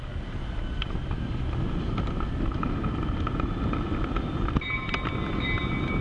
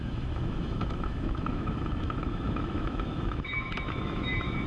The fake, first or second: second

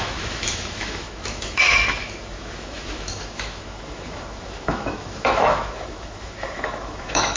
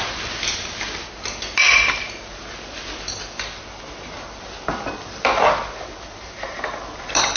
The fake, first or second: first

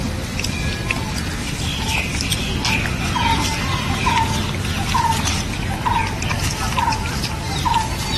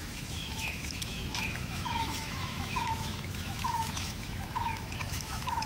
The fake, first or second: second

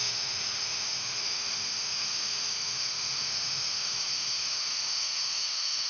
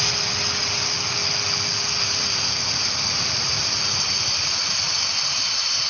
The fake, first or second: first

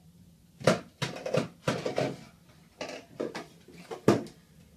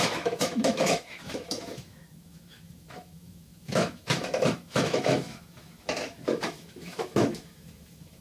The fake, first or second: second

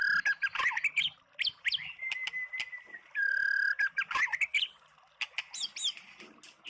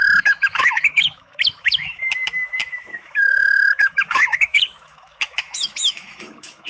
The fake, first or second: second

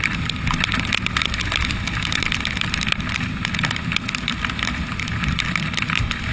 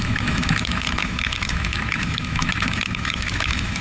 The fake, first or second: second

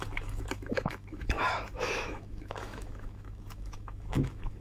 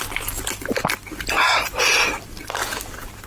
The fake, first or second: first